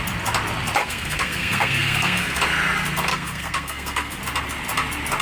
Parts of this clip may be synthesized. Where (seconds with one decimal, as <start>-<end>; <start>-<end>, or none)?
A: 0.8-2.4; 3.1-4.2